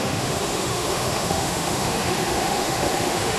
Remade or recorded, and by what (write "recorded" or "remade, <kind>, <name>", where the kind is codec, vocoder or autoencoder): remade, autoencoder, DAC-VAE